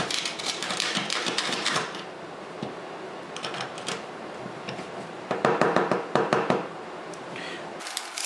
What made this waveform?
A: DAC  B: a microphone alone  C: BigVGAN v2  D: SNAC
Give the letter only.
C